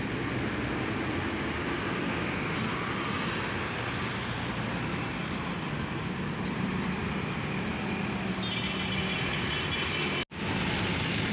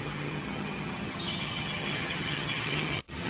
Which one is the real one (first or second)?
first